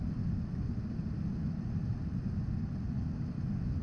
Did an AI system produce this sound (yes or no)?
no